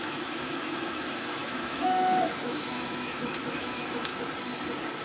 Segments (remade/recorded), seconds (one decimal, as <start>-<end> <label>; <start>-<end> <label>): 0.0-4.1 remade; 4.1-5.0 recorded